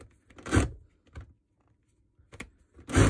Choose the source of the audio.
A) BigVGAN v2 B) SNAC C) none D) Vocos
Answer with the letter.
C